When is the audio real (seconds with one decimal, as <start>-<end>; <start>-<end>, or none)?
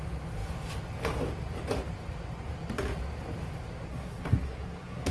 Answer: 0.0-3.9